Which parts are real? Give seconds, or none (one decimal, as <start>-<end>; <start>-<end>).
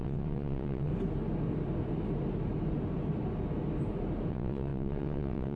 0.9-4.3